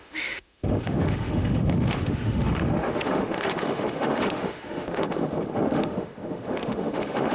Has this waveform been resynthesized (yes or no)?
yes